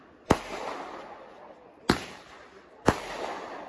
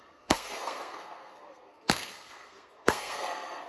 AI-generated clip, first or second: second